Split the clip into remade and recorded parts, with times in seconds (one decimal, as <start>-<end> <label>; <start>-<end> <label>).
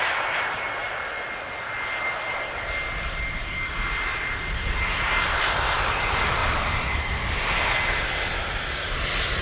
0.0-6.4 recorded; 6.4-7.2 remade; 7.2-9.4 recorded